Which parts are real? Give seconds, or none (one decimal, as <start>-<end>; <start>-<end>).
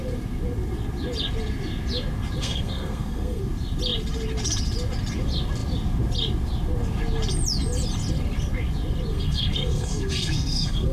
0.0-2.4; 3.4-9.1